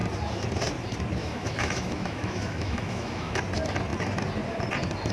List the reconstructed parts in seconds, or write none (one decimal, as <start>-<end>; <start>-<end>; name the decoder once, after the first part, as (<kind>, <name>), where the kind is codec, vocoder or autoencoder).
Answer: 1.2-3.4 (autoencoder, DAC-VAE)